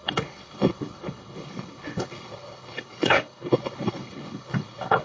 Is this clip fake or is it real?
fake